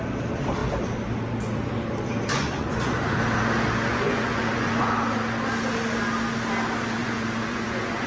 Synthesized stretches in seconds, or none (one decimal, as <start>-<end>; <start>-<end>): 2.3-3.2; 3.9-5.2; 7.0-8.1